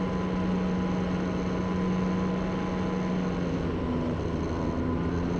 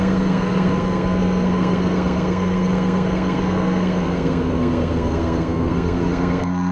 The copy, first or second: second